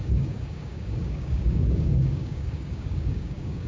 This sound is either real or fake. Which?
fake